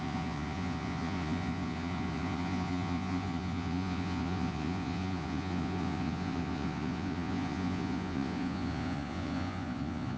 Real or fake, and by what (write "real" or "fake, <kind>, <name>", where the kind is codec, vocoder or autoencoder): fake, vocoder, Vocos